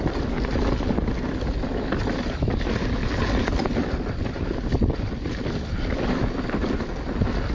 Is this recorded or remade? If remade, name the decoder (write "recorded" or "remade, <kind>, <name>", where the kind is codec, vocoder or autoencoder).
recorded